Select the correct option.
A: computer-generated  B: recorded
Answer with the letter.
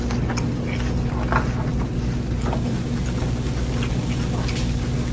B